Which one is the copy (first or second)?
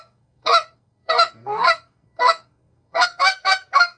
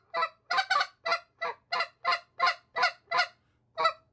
first